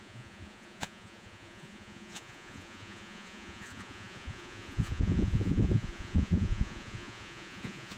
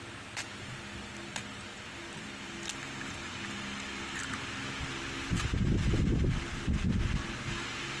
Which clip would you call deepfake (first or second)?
first